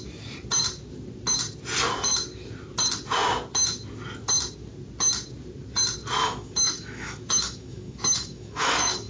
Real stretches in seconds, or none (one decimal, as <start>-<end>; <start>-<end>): 0.0-6.2